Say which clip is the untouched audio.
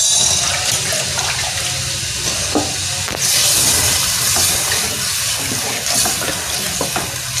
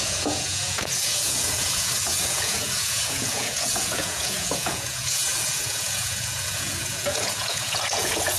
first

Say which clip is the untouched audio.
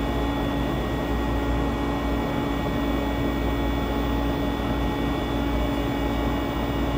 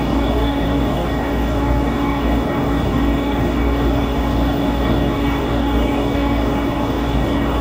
first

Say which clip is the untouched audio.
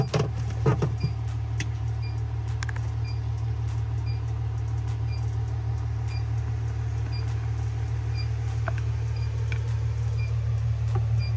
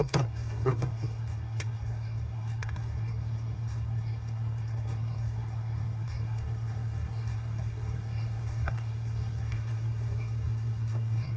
first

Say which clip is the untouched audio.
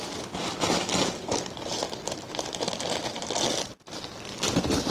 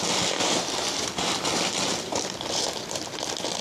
first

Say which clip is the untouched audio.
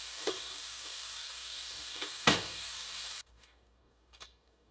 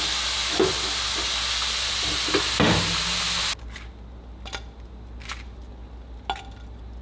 second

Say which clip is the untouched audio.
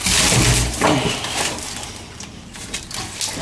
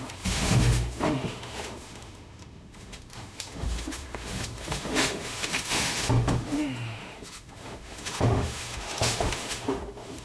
first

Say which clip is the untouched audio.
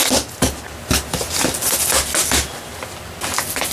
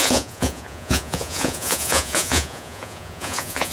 first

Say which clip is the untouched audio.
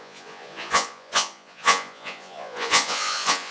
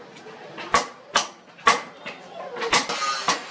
second